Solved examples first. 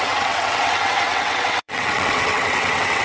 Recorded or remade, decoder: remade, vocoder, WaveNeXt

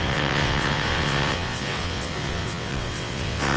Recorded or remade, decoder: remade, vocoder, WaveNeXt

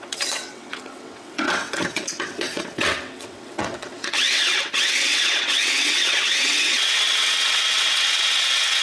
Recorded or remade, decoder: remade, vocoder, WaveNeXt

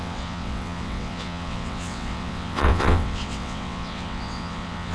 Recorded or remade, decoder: remade, vocoder, WaveNeXt